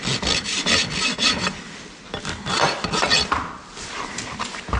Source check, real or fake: real